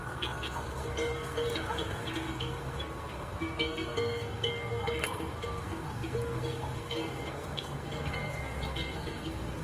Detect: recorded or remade remade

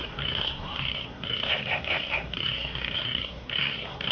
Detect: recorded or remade remade